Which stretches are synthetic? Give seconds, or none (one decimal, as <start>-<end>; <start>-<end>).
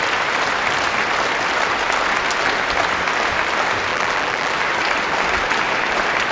3.9-4.5